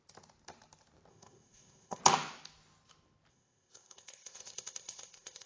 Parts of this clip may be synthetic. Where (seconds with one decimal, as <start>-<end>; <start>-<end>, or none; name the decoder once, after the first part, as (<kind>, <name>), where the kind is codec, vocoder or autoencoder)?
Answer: 1.1-2.0 (codec, ZipCodec); 3.3-5.5